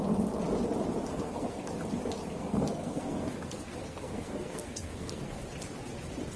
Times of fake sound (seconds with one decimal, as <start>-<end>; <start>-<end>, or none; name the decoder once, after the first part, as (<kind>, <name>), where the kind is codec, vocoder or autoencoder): 1.1-1.7 (codec, SNAC); 2.3-5.4

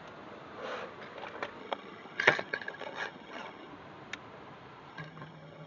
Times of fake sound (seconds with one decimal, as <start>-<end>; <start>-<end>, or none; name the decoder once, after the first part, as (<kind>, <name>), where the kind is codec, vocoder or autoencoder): 1.6-3.7 (vocoder, HiFi-GAN); 4.9-5.7